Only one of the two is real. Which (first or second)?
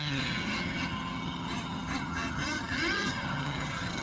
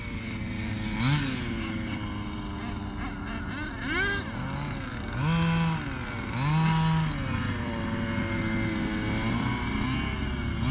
second